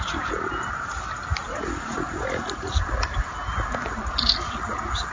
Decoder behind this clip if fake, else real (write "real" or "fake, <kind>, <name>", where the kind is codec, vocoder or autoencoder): real